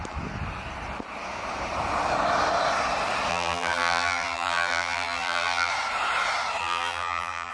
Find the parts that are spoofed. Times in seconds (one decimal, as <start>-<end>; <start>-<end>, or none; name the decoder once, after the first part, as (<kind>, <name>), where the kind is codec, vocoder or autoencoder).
3.3-5.7 (vocoder, BigVGAN v2); 6.6-7.5